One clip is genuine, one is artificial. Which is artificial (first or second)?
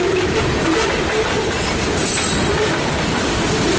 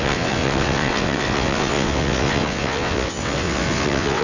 second